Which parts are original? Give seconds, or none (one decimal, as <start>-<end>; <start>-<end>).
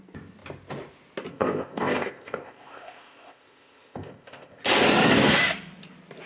0.0-1.3; 4.6-6.3